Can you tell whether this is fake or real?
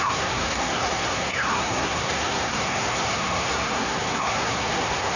fake